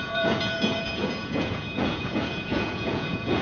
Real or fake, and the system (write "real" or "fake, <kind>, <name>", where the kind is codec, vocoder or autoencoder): fake, vocoder, Vocos